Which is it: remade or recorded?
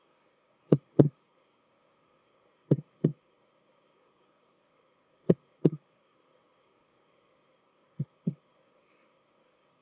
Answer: remade